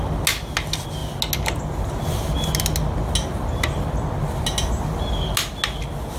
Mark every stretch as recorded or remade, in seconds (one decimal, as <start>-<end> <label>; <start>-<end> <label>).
0.0-6.2 recorded

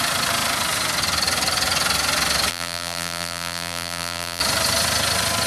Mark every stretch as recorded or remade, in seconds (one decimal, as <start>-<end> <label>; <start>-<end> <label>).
0.0-2.5 recorded; 2.5-4.4 remade; 4.4-5.5 recorded

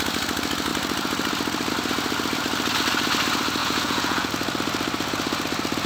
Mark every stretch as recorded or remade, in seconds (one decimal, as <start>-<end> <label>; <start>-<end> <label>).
0.0-3.6 recorded; 3.6-4.3 remade; 4.3-5.9 recorded

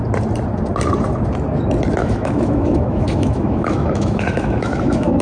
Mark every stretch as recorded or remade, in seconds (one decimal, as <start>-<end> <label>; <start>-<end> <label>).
0.0-2.0 recorded; 2.0-5.2 remade

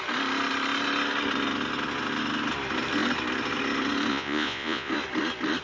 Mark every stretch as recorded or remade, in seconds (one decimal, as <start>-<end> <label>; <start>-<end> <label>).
0.0-4.1 recorded; 4.1-4.9 remade; 4.9-5.6 recorded

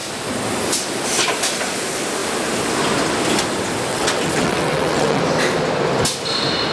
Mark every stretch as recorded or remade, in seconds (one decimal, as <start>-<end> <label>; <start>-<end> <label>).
0.0-3.9 recorded; 3.9-5.2 remade; 5.2-6.7 recorded

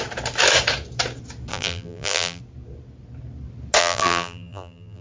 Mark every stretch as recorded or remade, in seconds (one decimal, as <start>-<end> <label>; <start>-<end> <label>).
0.0-1.5 recorded; 1.5-2.4 remade; 2.4-3.8 recorded; 3.8-5.0 remade

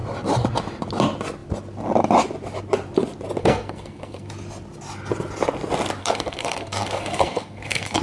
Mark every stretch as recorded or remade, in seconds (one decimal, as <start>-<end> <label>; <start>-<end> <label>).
0.0-3.4 recorded; 3.4-4.3 remade; 4.3-6.0 recorded; 6.0-8.0 remade